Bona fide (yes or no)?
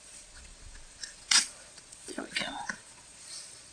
no